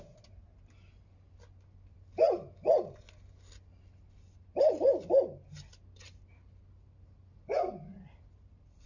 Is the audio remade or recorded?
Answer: recorded